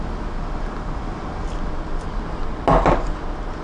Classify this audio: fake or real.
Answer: real